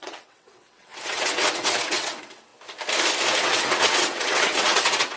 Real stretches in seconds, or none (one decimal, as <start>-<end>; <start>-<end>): 2.5-3.4